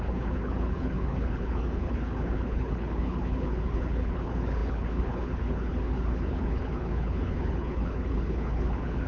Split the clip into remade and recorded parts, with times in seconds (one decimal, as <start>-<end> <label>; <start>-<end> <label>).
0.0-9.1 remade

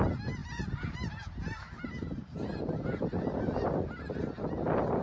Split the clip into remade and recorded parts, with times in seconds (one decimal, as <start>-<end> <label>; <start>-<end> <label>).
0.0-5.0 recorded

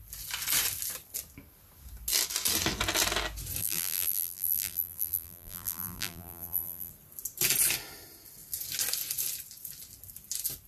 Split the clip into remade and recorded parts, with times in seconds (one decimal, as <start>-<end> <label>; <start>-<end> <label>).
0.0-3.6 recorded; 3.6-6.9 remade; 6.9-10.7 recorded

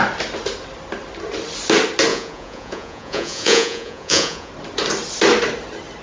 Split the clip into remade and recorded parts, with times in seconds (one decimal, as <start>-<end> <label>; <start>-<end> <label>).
0.0-2.1 recorded; 2.1-4.5 remade; 4.5-6.0 recorded

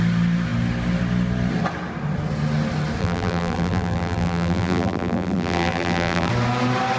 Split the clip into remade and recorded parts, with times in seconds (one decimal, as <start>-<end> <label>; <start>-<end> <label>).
0.0-3.0 recorded; 3.0-6.3 remade; 6.3-7.0 recorded

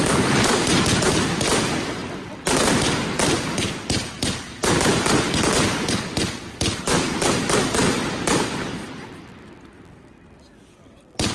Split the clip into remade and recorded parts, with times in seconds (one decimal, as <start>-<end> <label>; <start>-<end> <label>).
0.0-11.3 recorded